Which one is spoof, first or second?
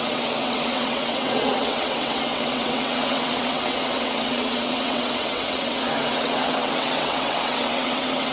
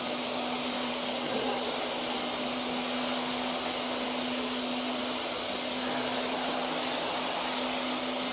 first